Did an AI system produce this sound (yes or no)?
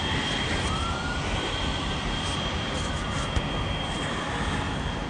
no